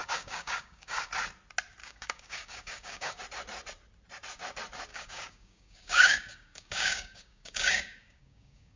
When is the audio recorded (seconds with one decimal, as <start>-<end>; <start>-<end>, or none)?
1.1-1.8; 3.2-4.9